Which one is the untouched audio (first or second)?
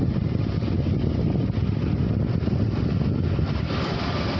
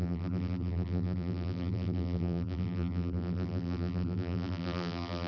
first